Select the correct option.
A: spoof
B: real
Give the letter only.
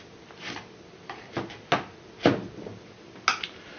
B